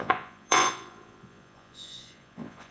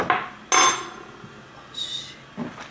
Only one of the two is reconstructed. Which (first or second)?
first